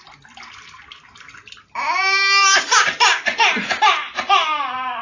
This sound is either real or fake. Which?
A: real